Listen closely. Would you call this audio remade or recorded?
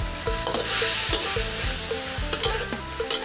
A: recorded